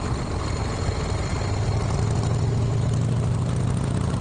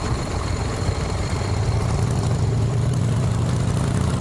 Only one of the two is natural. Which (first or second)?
first